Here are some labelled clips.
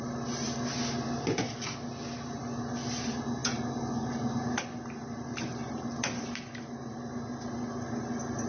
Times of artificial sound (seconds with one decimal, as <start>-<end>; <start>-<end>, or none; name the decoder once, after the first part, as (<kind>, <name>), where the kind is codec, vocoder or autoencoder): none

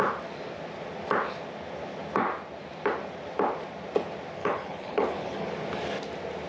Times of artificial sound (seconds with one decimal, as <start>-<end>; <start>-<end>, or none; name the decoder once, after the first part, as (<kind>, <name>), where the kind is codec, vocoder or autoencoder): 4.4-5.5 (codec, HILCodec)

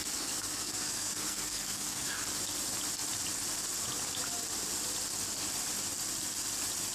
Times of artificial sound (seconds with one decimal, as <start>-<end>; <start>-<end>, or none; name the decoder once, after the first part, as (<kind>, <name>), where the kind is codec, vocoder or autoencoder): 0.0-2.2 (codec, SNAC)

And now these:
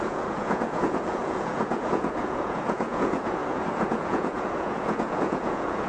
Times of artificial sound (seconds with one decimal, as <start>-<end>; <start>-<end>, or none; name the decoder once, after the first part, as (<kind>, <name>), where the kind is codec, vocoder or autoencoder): 0.0-5.9 (vocoder, Vocos)

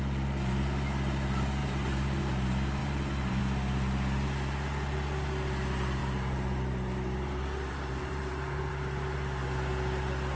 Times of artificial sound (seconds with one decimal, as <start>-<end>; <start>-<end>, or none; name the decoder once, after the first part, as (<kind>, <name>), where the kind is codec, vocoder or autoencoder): 1.6-2.2 (vocoder, BigVGAN v2); 2.8-3.4; 6.0-8.7

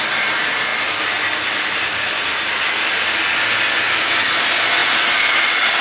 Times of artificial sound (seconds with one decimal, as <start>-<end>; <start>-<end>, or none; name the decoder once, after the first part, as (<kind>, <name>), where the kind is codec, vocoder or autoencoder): none